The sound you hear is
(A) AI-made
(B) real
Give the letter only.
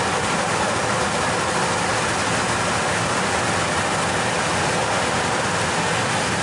B